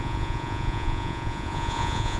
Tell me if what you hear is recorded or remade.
remade